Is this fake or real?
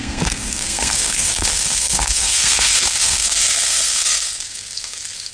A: fake